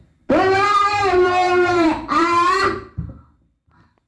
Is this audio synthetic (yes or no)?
yes